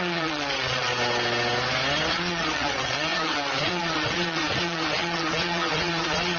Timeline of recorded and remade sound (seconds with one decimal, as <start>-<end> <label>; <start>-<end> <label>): 0.0-0.9 remade; 0.9-2.1 recorded; 2.1-6.4 remade